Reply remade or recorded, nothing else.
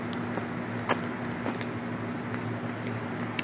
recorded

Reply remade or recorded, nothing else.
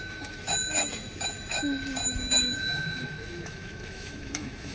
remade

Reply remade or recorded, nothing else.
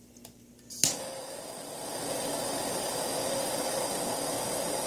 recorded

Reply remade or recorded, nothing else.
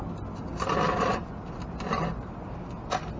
recorded